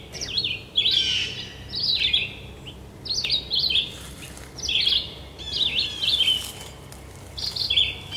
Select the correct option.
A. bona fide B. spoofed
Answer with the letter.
A